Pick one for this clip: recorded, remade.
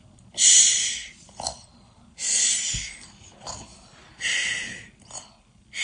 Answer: recorded